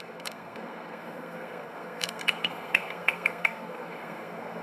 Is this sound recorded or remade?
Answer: remade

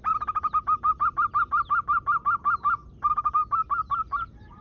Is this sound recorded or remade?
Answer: recorded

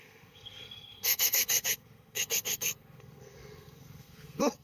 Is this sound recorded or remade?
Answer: remade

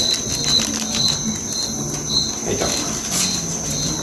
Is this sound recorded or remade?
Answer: recorded